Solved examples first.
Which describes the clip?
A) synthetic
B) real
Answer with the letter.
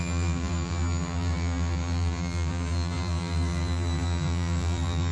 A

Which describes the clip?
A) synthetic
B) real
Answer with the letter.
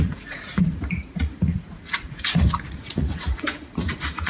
A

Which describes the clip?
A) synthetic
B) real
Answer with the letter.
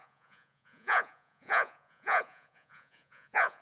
A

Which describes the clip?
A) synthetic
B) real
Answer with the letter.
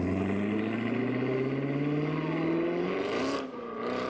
B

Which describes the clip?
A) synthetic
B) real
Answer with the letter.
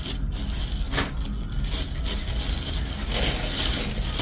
B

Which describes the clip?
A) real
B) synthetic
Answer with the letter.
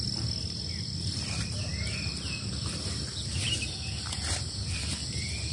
A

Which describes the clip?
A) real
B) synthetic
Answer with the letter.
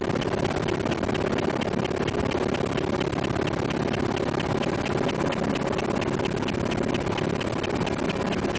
A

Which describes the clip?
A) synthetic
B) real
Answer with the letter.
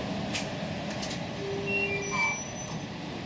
B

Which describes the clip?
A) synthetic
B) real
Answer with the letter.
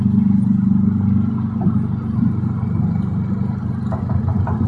B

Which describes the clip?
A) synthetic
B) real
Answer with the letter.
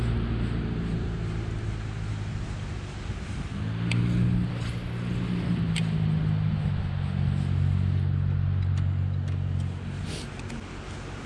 B